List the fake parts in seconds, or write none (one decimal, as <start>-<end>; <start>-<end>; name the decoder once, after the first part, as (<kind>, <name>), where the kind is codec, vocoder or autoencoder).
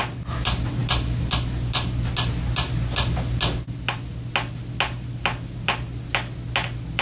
none